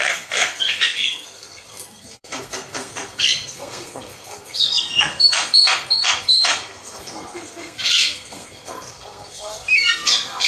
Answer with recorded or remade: remade